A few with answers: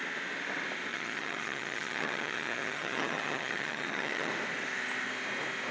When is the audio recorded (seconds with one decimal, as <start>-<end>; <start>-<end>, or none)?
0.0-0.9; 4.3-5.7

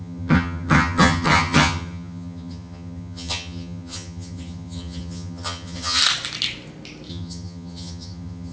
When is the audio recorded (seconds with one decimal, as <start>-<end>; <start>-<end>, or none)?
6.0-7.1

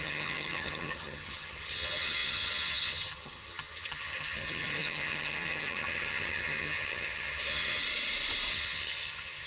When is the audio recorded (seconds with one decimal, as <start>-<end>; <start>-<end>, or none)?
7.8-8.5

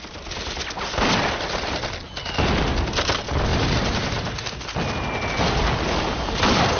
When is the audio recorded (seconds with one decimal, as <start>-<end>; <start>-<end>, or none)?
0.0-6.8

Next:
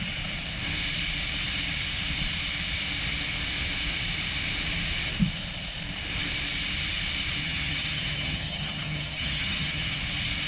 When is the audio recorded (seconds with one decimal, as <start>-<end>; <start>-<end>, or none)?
0.0-7.4; 10.0-10.5